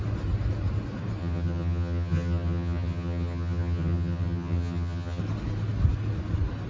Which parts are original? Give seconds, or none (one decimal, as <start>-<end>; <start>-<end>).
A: 0.0-1.2; 5.2-6.7